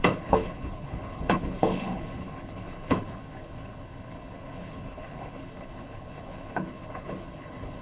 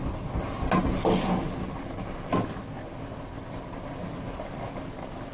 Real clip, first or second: second